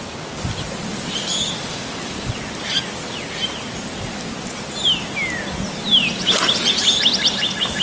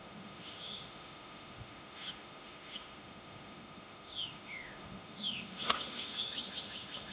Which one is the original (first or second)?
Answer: first